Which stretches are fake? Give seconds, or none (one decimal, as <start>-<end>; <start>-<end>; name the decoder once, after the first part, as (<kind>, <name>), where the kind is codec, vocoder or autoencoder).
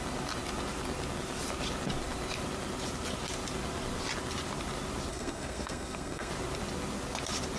5.1-6.3 (codec, SNAC)